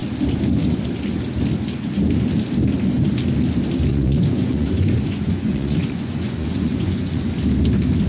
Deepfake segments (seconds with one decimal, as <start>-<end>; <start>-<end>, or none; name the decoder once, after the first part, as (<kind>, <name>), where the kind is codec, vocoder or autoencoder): 3.9-7.2 (vocoder, Vocos)

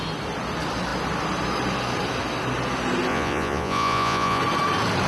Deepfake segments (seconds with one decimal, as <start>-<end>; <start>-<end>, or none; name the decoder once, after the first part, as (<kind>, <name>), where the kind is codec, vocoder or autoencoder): 3.1-4.4 (vocoder, Vocos)

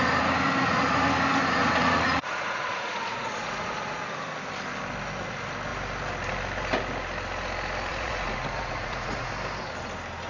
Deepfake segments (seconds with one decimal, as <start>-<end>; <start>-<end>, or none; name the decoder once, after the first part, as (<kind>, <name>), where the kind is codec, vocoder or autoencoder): 1.8-4.0 (vocoder, Vocos); 7.9-9.3

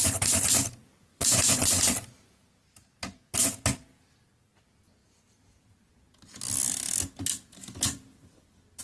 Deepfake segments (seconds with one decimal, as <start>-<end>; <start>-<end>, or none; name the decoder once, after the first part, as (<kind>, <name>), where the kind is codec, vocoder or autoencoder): 1.1-1.8 (vocoder, Vocos)

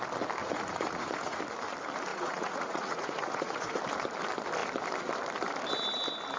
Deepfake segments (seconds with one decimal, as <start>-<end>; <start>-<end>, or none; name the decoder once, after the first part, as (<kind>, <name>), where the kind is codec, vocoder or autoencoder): 0.4-1.4 (vocoder, Vocos); 2.1-3.8

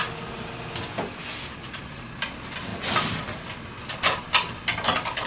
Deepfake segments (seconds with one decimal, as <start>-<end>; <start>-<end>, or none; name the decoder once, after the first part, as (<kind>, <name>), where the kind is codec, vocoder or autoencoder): 1.6-2.2 (vocoder, Vocos)

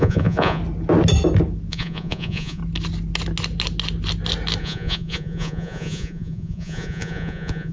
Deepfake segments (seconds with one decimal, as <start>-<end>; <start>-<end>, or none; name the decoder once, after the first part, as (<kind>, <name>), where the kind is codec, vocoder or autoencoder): 0.0-0.6 (vocoder, Vocos); 1.7-2.6; 4.6-7.7

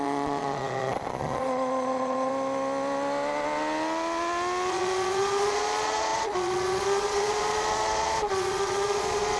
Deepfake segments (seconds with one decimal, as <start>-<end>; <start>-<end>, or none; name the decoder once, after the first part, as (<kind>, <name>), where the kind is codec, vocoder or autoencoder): 0.0-2.3 (vocoder, Vocos); 4.7-9.4